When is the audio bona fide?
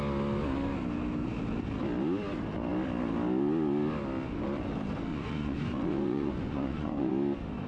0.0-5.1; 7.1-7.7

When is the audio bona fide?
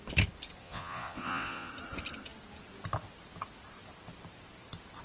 0.0-0.6; 1.7-5.0